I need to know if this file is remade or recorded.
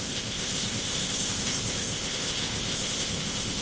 remade